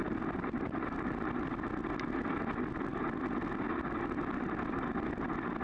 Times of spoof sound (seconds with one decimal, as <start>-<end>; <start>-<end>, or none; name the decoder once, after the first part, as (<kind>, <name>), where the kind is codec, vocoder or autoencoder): 2.9-3.8 (vocoder, BigVGAN v2)